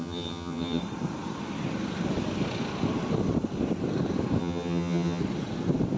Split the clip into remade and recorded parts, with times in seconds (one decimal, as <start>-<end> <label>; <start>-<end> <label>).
0.0-0.8 remade; 0.8-4.4 recorded; 4.4-5.2 remade; 5.2-6.0 recorded